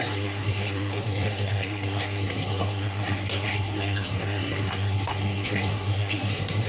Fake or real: fake